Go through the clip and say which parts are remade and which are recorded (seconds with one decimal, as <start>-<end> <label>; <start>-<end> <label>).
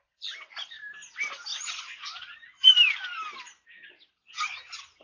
0.0-1.5 recorded; 1.5-2.7 remade; 2.7-5.0 recorded